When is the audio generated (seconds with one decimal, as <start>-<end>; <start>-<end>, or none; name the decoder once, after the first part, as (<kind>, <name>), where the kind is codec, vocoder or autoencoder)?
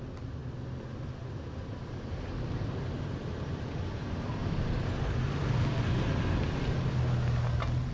none